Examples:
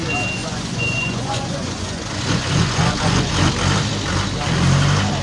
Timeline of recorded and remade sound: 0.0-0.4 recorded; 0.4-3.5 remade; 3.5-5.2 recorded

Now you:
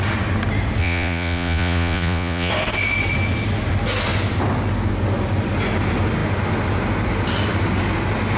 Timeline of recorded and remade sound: 0.0-0.8 recorded; 0.8-2.5 remade; 2.5-8.4 recorded

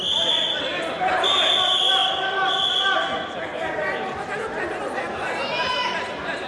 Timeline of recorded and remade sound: 0.0-3.5 recorded; 3.5-4.1 remade; 4.1-6.5 recorded

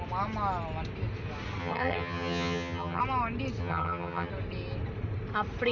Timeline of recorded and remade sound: 0.0-1.6 recorded; 1.6-3.0 remade; 3.0-3.6 recorded; 3.6-4.3 remade; 4.3-5.7 recorded

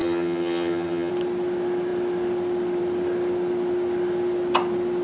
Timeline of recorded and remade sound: 0.0-1.1 remade; 1.1-5.0 recorded